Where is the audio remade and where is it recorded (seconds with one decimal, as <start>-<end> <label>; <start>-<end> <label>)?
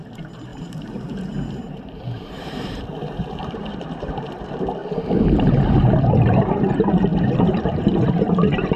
0.0-4.8 remade; 4.8-6.0 recorded; 6.0-8.8 remade